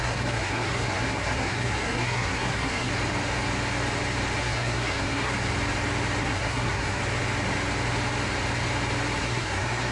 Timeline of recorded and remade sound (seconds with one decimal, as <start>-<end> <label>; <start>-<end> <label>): 0.0-2.9 remade; 2.9-4.4 recorded; 4.4-5.3 remade; 5.3-6.2 recorded; 6.2-7.0 remade; 7.0-9.2 recorded; 9.2-9.9 remade